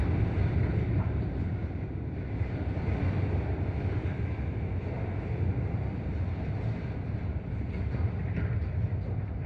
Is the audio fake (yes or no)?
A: no